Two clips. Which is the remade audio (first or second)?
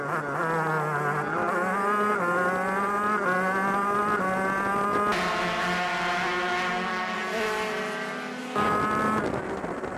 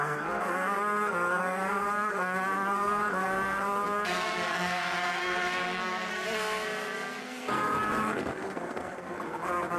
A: second